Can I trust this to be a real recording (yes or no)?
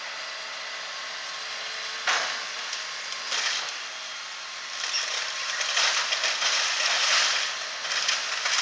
yes